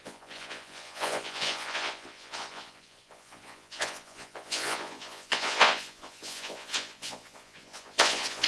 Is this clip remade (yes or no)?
yes